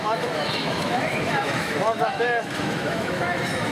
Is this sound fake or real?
fake